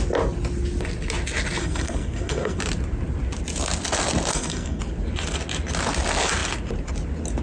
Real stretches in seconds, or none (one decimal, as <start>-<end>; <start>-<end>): 0.0-1.6; 2.6-4.3; 4.8-7.4